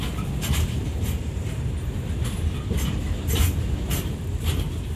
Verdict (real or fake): real